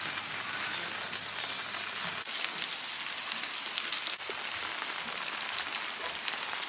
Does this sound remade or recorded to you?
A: recorded